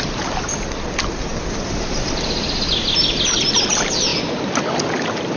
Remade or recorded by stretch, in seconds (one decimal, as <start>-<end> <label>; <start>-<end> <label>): 0.0-5.4 recorded